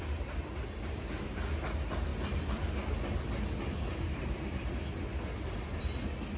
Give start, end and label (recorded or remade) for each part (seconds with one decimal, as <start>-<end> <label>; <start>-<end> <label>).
0.0-6.4 recorded